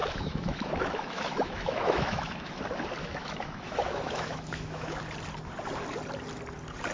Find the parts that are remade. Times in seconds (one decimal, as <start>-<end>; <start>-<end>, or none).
0.0-2.6; 3.0-5.0